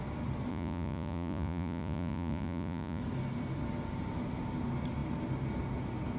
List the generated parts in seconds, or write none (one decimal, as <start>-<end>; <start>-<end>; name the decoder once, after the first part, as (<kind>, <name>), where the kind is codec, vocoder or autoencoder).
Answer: 0.5-3.0 (vocoder, Vocos)